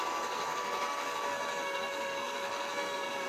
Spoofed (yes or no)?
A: yes